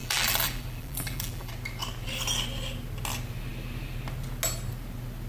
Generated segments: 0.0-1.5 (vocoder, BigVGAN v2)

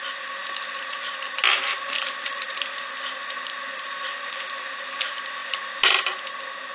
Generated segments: none

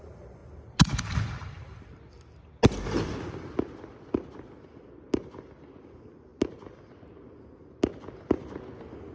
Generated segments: none

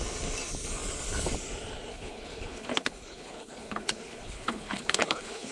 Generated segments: 1.9-5.5 (codec, HILCodec)

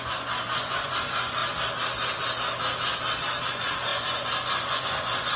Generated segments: 0.0-1.4 (vocoder, Vocos); 3.5-5.4

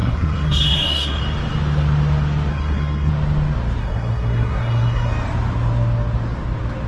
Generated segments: 0.0-1.2 (codec, SNAC); 2.5-3.1; 3.8-5.1